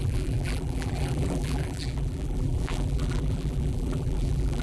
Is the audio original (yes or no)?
no